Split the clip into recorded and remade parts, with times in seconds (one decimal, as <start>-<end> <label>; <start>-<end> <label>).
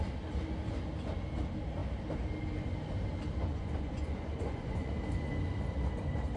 0.0-3.5 recorded; 3.5-4.9 remade; 4.9-6.4 recorded